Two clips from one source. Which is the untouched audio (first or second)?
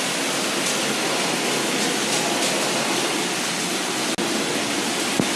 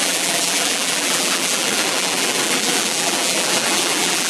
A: first